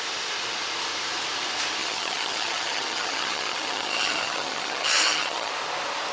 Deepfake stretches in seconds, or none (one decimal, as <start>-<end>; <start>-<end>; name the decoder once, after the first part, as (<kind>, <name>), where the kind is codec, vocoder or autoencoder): 1.8-5.5 (vocoder, HiFi-GAN)